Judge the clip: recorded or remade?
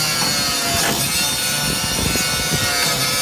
recorded